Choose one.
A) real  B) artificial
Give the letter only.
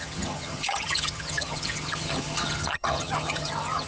B